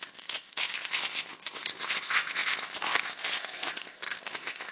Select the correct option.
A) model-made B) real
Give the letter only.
A